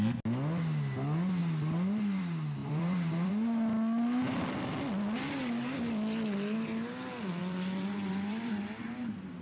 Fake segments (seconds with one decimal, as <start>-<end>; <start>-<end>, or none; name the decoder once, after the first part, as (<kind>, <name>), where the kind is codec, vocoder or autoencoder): 2.6-3.3 (vocoder, BigVGAN v2); 7.4-8.5